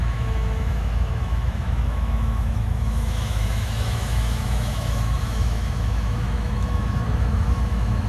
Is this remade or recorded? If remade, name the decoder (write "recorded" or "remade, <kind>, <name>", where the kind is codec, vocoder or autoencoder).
remade, autoencoder, DAC-VAE